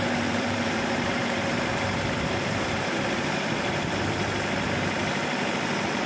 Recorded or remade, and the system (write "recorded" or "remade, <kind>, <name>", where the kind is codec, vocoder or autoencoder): remade, vocoder, BigVGAN v2